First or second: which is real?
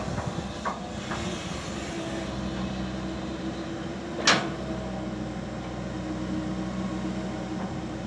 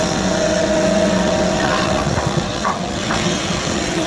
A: first